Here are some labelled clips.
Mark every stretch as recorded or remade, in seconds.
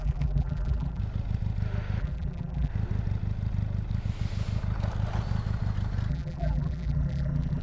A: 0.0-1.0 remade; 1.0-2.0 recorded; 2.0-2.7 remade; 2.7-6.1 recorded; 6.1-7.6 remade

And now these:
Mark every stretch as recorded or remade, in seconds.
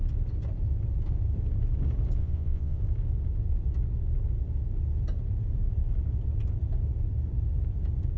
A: 0.0-2.2 recorded; 2.2-2.8 remade; 2.8-8.2 recorded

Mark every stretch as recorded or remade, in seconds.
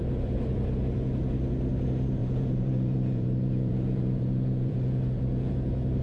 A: 0.0-2.2 recorded; 2.2-5.5 remade; 5.5-6.0 recorded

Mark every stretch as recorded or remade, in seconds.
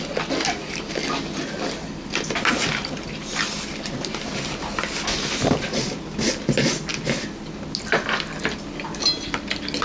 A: 0.0-9.8 recorded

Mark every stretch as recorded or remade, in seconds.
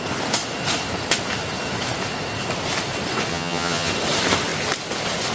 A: 0.0-3.3 recorded; 3.3-3.9 remade; 3.9-5.3 recorded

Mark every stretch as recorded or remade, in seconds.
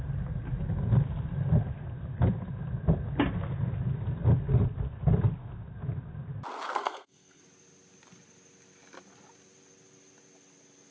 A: 0.0-6.8 recorded; 6.8-7.4 remade; 7.4-10.9 recorded